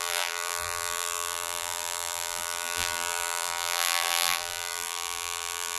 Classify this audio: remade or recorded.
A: remade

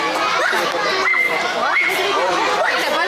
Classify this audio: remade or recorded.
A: recorded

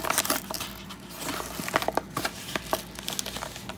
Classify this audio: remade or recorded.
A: recorded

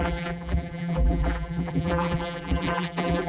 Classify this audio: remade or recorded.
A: remade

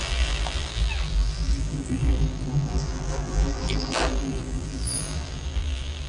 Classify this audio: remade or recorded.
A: remade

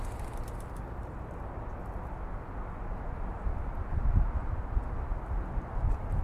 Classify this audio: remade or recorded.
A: recorded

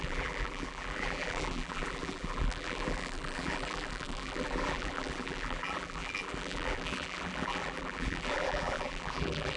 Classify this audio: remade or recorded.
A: remade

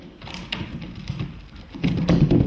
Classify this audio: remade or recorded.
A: recorded